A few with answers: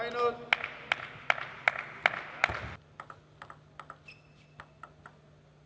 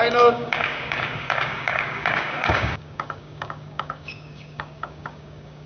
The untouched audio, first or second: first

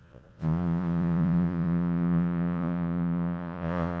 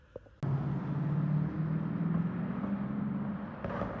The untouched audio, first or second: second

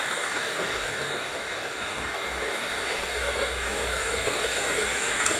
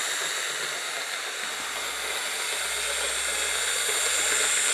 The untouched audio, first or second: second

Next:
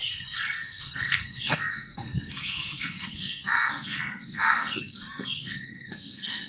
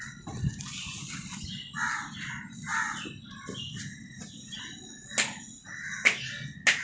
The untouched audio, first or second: second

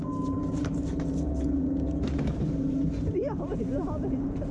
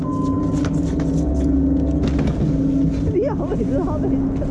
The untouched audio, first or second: second